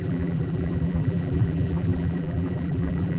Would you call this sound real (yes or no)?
no